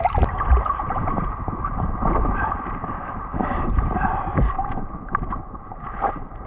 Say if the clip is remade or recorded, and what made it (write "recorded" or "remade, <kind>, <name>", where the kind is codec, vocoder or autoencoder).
remade, vocoder, BigVGAN v2